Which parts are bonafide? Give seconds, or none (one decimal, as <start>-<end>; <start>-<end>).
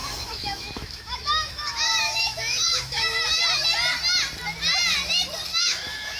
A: 3.4-5.5